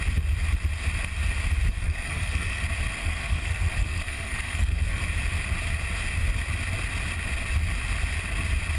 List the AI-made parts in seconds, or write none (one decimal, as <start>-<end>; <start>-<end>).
1.7-2.6; 3.0-5.0